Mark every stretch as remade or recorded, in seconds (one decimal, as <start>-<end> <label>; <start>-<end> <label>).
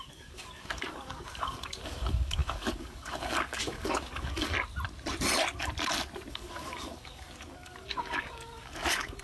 0.0-4.5 remade; 4.5-6.3 recorded; 6.3-9.2 remade